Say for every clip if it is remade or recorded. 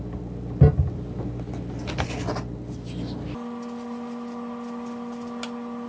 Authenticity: recorded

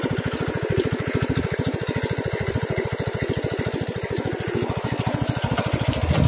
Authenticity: recorded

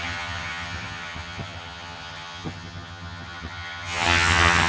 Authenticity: remade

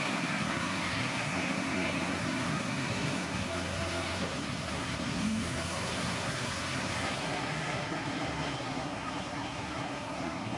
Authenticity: remade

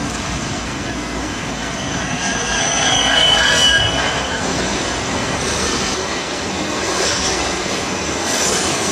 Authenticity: remade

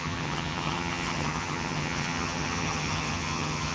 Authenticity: remade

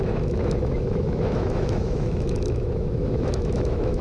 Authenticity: remade